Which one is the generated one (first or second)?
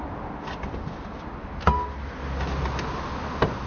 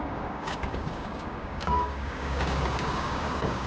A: second